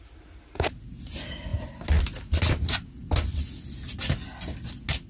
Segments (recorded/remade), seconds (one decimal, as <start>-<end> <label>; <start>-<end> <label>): 0.0-5.1 recorded